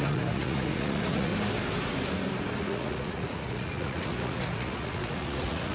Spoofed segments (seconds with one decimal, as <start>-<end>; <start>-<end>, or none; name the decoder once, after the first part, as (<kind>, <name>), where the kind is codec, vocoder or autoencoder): 0.0-1.3 (vocoder, Vocos); 2.6-5.7